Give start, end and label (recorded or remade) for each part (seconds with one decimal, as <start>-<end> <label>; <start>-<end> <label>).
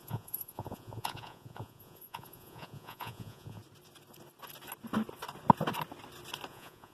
0.0-3.6 remade; 3.6-6.5 recorded; 6.5-6.9 remade